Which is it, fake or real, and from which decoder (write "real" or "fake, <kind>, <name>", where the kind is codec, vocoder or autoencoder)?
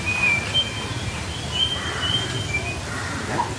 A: real